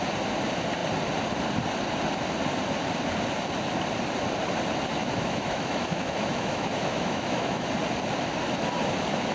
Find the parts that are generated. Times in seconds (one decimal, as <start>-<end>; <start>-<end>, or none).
5.0-7.7